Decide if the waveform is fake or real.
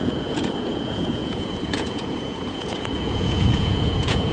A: fake